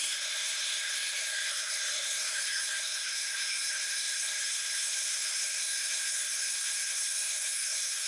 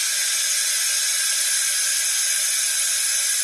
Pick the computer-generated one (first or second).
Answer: first